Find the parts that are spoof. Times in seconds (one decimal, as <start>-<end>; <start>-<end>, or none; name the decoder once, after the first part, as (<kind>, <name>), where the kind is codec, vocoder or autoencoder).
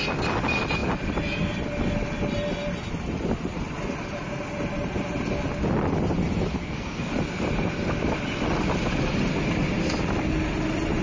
6.6-7.1 (codec, SNAC)